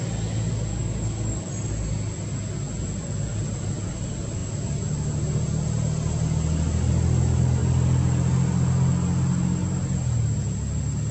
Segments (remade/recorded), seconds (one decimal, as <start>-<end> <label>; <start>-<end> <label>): 0.0-0.7 recorded; 0.7-1.5 remade; 1.5-11.1 recorded